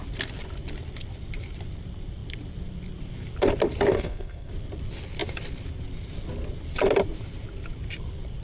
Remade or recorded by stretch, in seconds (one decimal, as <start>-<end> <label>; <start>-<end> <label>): 0.0-3.9 recorded; 3.9-4.5 remade; 4.5-8.4 recorded